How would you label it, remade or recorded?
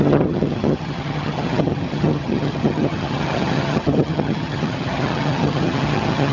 remade